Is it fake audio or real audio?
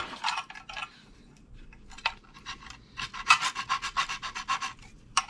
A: fake